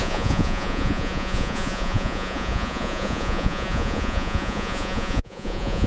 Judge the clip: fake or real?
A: fake